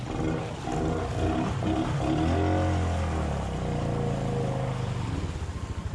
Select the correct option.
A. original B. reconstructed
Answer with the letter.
A